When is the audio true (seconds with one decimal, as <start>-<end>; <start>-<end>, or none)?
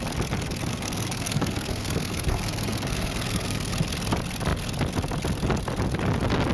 0.0-0.7; 3.7-6.5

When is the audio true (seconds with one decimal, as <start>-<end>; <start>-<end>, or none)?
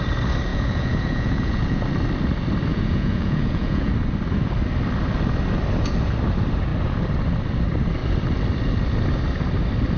0.0-0.5; 1.8-2.7; 3.9-10.0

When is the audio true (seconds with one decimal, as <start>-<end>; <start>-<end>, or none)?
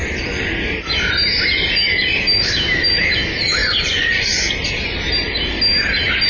0.0-3.6; 4.5-6.3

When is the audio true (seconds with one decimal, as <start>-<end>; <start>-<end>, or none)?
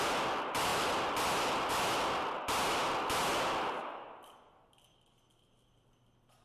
0.0-6.4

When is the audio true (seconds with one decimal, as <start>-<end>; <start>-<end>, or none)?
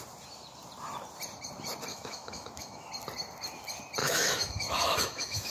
0.0-1.9; 2.9-4.0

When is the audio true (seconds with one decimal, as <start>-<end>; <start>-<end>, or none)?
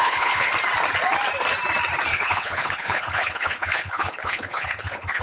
0.5-2.1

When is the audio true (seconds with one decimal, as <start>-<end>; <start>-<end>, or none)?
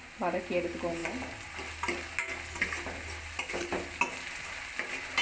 0.0-5.2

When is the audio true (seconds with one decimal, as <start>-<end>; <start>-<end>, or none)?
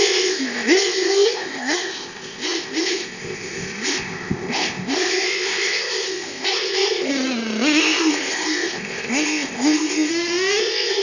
7.1-7.8; 10.1-10.6